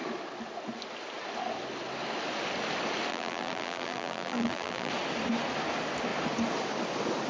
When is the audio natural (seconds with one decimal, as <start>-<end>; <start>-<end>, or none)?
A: 0.0-3.1; 4.9-7.3